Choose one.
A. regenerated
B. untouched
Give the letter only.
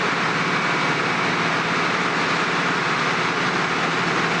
B